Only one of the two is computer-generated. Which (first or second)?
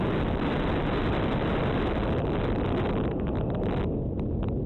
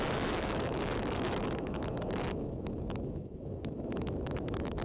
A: second